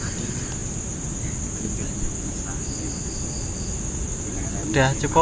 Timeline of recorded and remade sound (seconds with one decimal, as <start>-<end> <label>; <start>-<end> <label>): 0.0-5.2 recorded